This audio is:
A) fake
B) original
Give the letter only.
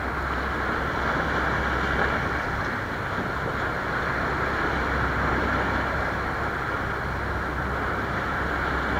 B